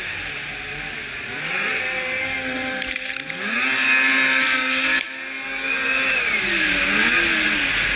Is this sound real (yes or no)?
yes